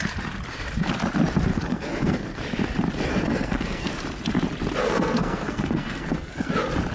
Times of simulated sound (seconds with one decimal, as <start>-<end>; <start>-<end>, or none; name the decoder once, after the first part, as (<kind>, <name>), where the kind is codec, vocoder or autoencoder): 1.5-2.4 (codec, SNAC); 3.1-3.9; 4.8-6.5